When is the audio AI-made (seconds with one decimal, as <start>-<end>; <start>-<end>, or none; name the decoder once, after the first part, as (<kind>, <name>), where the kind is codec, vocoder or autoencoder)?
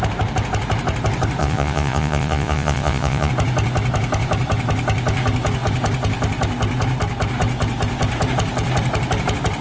1.4-3.3 (vocoder, Vocos)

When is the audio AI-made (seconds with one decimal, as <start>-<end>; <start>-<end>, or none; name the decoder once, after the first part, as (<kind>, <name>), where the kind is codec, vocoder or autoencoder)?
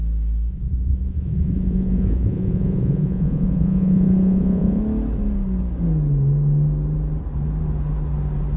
0.5-4.8 (vocoder, Vocos)